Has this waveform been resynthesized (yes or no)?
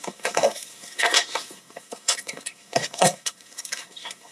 yes